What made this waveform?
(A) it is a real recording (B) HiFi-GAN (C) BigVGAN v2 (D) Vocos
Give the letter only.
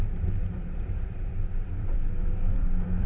C